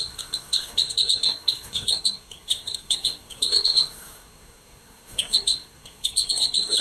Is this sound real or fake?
fake